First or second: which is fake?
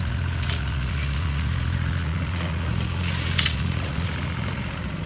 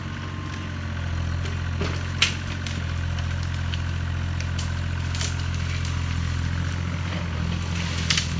first